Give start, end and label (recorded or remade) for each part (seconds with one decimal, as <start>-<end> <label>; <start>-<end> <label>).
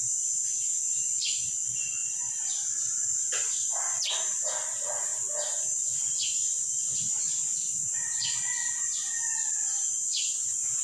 0.0-10.8 recorded